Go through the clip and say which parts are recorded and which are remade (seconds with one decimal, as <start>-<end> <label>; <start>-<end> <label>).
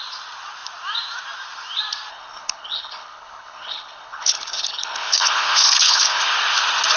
0.0-2.1 recorded; 2.1-6.2 remade; 6.2-7.0 recorded